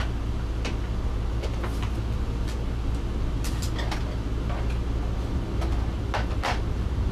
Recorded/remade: recorded